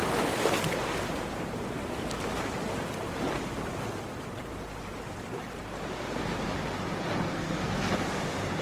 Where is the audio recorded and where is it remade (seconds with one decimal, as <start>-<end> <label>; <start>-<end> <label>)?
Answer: 0.0-7.3 recorded; 7.3-7.9 remade; 7.9-8.6 recorded